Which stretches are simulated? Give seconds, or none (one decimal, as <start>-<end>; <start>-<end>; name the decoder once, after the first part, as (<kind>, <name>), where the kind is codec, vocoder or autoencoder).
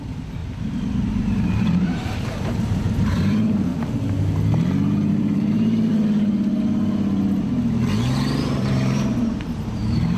0.0-0.4 (vocoder, BigVGAN v2); 1.0-3.7; 5.1-5.9; 8.4-10.2